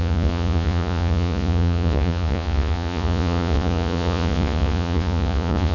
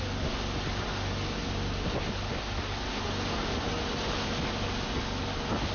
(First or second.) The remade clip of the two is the first